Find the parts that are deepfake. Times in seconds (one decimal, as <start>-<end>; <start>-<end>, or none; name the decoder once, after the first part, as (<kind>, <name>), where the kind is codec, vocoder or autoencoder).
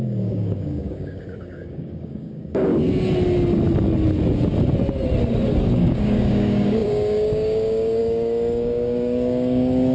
0.0-2.7 (codec, DAC); 5.6-9.9